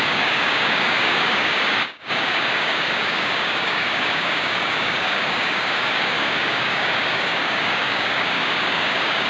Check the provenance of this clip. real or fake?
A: fake